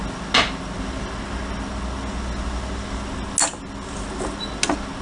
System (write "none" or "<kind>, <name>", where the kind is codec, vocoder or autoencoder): none